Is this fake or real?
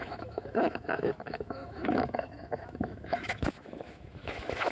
fake